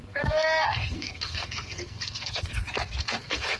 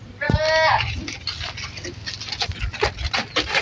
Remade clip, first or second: first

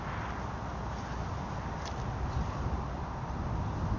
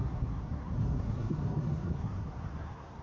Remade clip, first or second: second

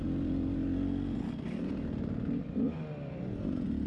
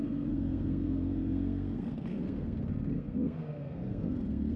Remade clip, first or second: second